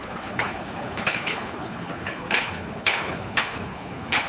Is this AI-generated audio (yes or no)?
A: yes